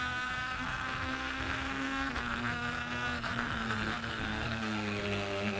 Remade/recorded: remade